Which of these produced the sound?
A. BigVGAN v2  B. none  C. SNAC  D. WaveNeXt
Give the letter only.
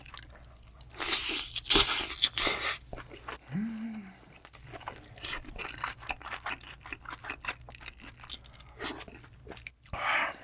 B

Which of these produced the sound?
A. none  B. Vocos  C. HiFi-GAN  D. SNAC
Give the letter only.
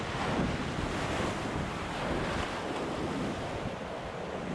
A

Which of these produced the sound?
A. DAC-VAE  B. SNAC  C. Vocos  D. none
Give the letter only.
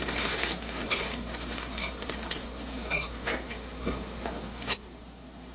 B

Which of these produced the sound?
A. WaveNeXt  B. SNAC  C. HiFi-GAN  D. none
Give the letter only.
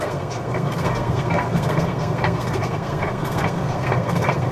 B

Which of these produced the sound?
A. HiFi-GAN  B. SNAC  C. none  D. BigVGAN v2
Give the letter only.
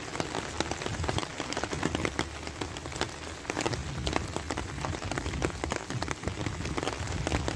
C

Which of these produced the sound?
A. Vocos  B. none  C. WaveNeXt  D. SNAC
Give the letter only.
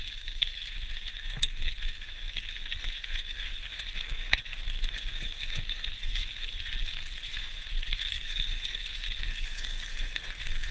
D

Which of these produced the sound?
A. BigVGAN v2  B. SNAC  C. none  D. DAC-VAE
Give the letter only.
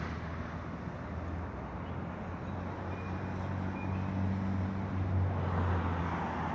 C